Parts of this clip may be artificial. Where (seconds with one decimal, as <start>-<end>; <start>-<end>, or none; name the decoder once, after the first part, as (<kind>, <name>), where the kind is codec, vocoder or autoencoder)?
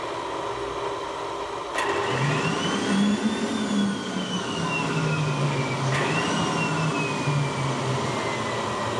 4.0-6.1 (codec, DAC)